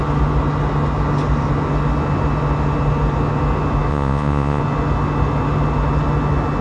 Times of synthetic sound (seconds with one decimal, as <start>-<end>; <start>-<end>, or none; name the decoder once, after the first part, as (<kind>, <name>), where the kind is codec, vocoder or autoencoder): 3.9-4.6 (vocoder, Vocos)